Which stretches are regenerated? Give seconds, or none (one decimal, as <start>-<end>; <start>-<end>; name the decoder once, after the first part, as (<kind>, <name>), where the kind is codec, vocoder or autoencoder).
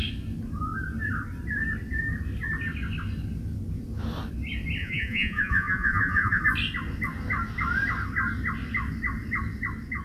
4.8-6.4 (vocoder, Vocos)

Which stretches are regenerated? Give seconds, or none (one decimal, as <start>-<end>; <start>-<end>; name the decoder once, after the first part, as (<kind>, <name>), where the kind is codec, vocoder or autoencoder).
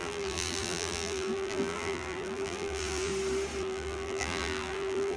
0.0-3.1 (vocoder, BigVGAN v2); 3.6-5.2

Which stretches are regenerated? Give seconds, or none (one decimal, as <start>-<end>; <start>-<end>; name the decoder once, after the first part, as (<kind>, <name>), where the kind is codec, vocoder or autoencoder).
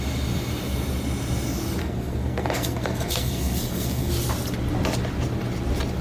1.8-4.1 (codec, SNAC)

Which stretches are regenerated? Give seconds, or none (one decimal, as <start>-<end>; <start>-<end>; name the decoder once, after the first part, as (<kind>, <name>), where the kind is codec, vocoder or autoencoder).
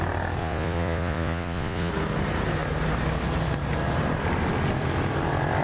0.4-1.9 (vocoder, Vocos)